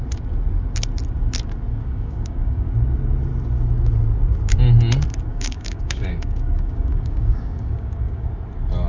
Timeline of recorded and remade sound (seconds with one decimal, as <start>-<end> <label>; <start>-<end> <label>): 0.0-1.7 recorded; 1.7-2.7 remade; 2.7-5.3 recorded; 5.3-8.3 remade; 8.3-8.9 recorded